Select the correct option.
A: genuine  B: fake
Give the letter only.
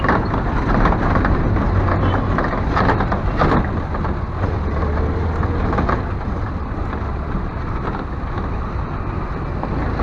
A